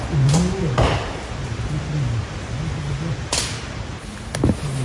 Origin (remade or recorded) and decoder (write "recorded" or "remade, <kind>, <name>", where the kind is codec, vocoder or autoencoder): recorded